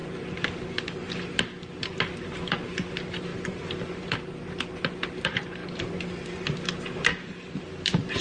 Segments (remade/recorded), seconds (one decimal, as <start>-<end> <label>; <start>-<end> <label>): 0.0-8.2 recorded